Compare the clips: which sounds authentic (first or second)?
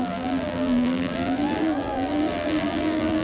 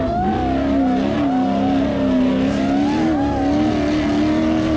second